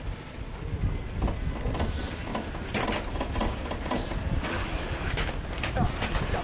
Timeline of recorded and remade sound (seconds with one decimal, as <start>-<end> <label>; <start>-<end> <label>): 0.0-4.6 recorded; 4.6-5.3 remade; 5.3-6.4 recorded